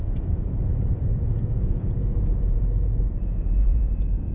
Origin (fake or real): fake